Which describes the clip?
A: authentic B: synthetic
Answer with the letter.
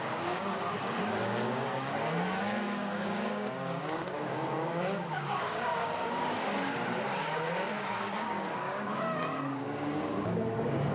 B